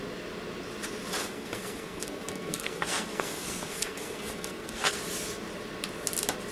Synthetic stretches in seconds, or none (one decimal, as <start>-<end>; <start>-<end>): 1.2-5.0

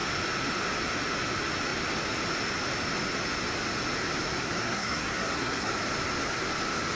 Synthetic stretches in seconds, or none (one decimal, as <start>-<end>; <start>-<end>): 4.4-5.7

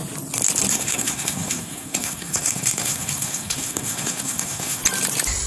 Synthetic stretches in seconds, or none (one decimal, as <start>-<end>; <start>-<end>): 0.7-4.8

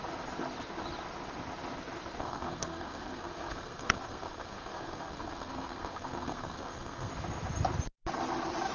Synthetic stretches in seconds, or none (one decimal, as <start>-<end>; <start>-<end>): 2.2-7.1

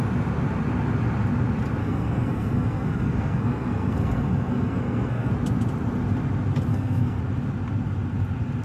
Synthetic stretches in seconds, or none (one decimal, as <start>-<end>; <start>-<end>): 1.8-5.3; 6.7-7.2

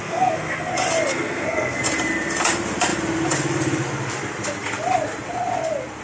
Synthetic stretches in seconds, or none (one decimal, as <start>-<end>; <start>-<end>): 0.0-0.7; 1.1-1.8

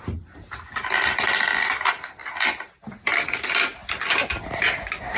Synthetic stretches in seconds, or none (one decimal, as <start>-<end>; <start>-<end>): none

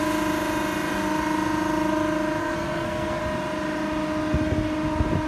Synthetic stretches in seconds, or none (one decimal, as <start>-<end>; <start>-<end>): 2.4-3.2